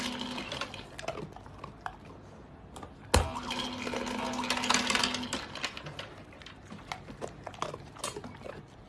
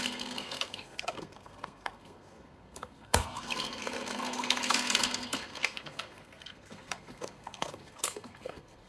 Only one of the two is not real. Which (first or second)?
second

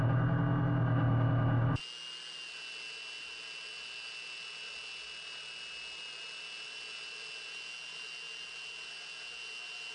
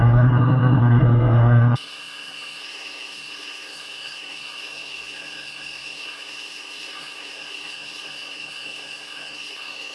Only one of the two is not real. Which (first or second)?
second